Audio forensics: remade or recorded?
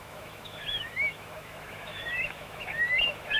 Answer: remade